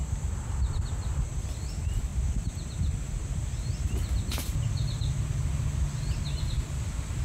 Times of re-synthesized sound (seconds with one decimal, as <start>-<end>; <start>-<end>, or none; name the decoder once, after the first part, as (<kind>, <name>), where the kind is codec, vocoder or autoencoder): 0.0-2.1 (vocoder, BigVGAN v2); 6.4-7.2